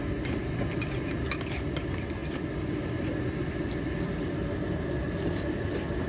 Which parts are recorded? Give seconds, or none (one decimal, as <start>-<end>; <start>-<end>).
0.0-6.1